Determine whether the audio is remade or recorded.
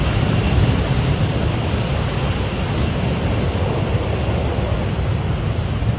recorded